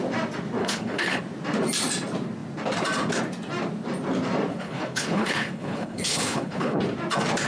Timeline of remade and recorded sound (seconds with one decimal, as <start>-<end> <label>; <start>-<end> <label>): 0.0-0.6 recorded; 0.6-1.2 remade; 1.2-4.5 recorded; 4.5-6.8 remade; 6.8-7.5 recorded

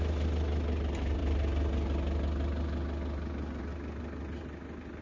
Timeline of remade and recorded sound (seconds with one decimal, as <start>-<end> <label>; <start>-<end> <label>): 0.0-5.0 recorded

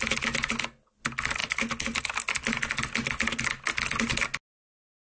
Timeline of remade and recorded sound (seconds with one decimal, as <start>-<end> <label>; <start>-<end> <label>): 0.0-5.2 recorded

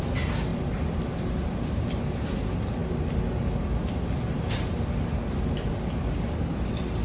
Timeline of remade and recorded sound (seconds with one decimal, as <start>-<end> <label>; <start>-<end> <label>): 0.0-0.5 recorded; 0.5-1.5 remade; 1.5-7.0 recorded